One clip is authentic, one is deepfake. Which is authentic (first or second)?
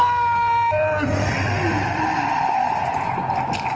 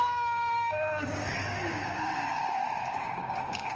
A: first